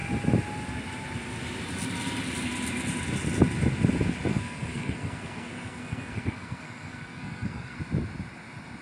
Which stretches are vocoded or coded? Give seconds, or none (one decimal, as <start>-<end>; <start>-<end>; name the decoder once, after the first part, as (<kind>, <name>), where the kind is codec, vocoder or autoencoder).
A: 4.3-7.8 (codec, SNAC)